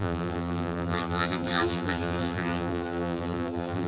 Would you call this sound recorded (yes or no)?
no